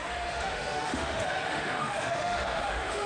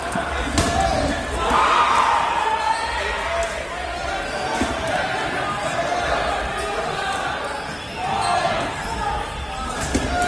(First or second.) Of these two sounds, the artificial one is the first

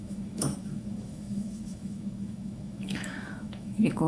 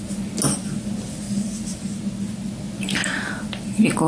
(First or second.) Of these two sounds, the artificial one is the first